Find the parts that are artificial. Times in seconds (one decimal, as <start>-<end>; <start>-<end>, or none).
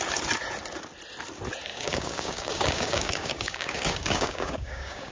1.7-5.1